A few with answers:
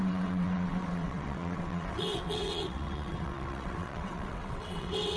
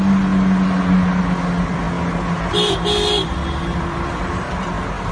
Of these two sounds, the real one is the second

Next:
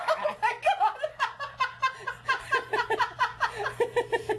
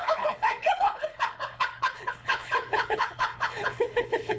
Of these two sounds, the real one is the first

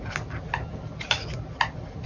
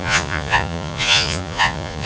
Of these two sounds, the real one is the first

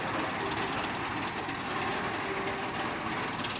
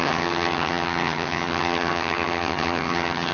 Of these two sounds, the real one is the first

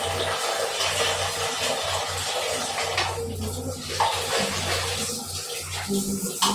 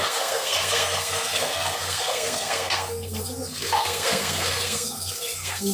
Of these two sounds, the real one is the first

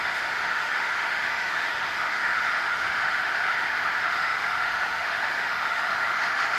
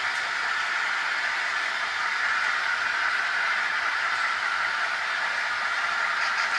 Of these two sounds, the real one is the second